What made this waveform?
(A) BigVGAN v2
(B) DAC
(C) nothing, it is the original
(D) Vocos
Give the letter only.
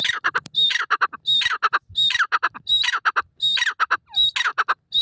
C